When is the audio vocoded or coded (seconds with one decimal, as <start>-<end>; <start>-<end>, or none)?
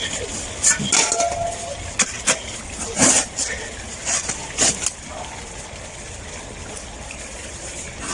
none